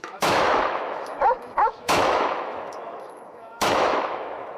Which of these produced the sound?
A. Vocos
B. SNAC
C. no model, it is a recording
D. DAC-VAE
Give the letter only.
D